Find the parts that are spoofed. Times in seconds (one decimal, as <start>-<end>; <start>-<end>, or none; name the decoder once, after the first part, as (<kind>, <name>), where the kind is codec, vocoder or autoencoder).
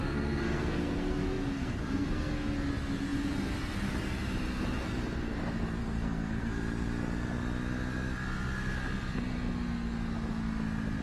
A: 0.0-2.3 (codec, SNAC); 5.8-6.5